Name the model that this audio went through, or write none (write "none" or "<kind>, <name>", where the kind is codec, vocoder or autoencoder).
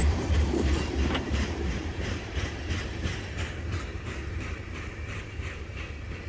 vocoder, BigVGAN v2